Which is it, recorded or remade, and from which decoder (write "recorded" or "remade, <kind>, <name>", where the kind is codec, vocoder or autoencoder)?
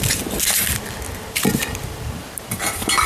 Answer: recorded